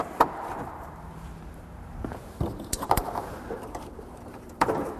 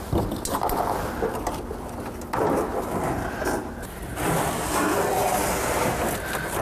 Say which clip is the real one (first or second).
second